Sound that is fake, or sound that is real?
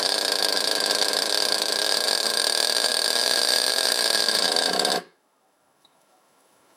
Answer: fake